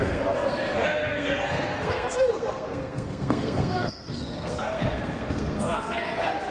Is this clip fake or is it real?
fake